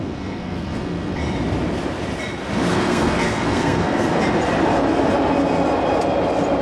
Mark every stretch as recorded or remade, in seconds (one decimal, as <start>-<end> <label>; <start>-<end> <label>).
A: 0.0-1.2 remade; 1.2-2.7 recorded; 2.7-4.2 remade; 4.2-6.6 recorded